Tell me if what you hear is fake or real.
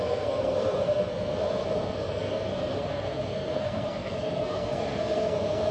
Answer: fake